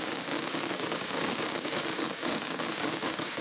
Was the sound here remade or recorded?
remade